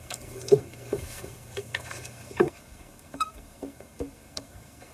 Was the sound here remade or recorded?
remade